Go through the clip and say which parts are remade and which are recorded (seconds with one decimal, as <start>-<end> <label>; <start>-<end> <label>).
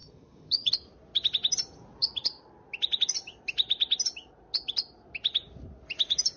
0.0-0.7 remade; 0.7-6.4 recorded